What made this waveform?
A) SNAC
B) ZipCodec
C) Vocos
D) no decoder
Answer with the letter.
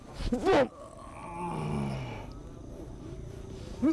D